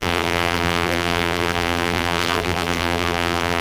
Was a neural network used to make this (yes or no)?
yes